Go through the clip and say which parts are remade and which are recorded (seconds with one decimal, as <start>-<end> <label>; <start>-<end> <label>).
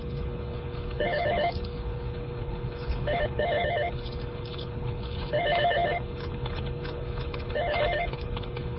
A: 0.0-8.8 remade